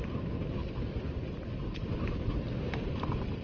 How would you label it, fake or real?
real